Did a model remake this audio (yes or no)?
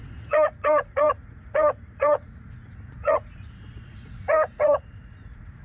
yes